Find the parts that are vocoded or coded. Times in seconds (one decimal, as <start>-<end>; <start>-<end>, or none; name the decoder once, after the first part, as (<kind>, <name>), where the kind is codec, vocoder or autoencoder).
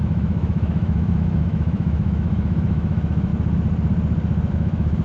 0.0-3.3 (autoencoder, DAC-VAE); 4.5-5.0